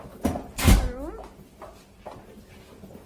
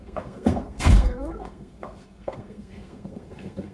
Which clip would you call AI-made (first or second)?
second